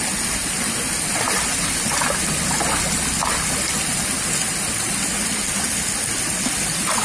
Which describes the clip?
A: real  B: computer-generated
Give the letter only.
A